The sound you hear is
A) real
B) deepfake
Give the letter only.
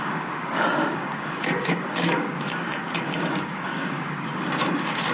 B